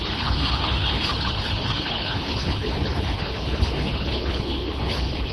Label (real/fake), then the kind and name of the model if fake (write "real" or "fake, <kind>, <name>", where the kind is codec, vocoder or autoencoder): fake, codec, HILCodec